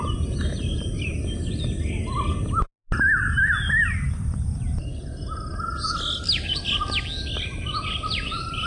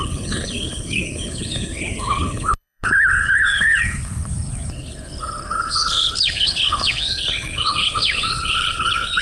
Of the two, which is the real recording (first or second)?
first